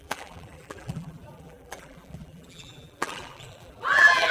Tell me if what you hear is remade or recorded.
remade